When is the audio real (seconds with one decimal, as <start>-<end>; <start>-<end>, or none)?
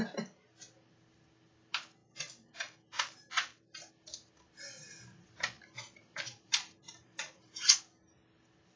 0.0-2.0; 3.9-4.9; 7.7-8.8